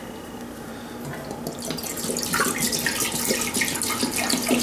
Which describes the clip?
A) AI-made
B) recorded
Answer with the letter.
B